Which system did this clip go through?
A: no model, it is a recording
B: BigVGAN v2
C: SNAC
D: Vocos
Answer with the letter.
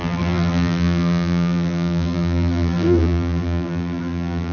B